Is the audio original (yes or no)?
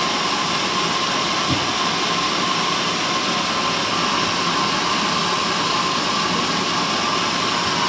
yes